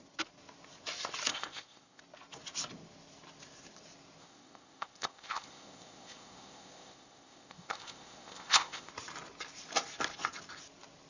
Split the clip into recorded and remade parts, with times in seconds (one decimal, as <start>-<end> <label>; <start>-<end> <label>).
0.0-1.3 recorded; 1.3-2.0 remade; 2.0-4.2 recorded; 4.2-8.9 remade; 8.9-11.1 recorded